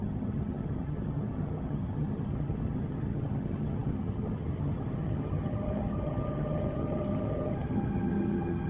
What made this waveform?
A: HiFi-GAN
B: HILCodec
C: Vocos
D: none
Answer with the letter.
A